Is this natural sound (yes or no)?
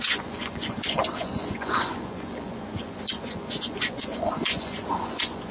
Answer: no